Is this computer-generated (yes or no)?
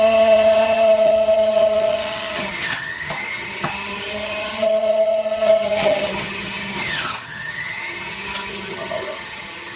yes